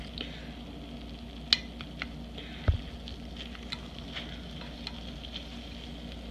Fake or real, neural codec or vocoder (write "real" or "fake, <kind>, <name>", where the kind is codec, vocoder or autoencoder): real